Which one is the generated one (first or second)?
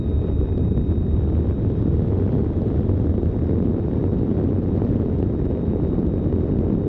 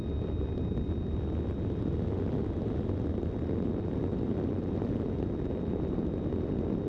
first